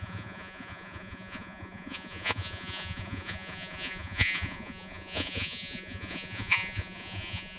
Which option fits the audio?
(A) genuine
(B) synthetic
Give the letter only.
B